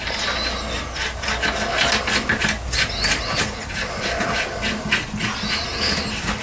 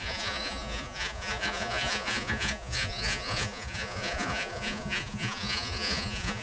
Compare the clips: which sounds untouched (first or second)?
first